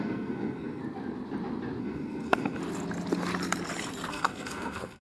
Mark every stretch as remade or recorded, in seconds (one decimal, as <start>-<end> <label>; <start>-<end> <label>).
0.0-0.8 remade; 0.8-1.8 recorded; 1.8-2.6 remade; 2.6-4.1 recorded; 4.1-5.1 remade